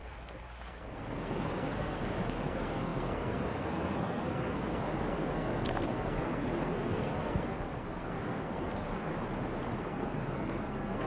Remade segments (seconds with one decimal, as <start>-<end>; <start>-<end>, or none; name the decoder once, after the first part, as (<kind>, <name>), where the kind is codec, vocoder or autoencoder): 0.0-9.1 (codec, SNAC); 9.8-11.1